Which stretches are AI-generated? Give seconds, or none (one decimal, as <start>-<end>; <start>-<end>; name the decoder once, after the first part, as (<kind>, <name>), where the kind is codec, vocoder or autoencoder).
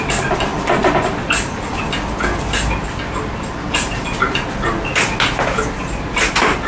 none